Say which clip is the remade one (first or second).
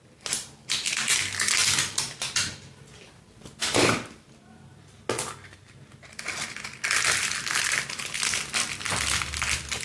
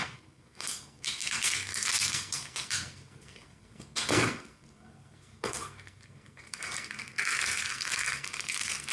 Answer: second